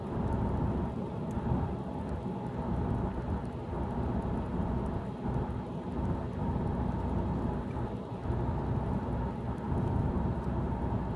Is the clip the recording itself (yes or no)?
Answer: yes